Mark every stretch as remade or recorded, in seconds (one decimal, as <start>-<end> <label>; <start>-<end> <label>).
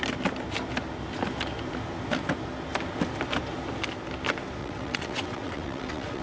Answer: 0.0-4.6 recorded; 4.6-6.2 remade